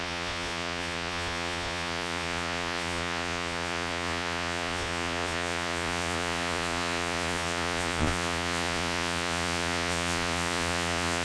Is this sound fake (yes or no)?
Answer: yes